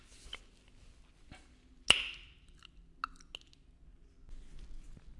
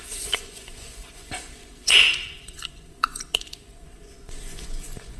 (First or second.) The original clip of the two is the first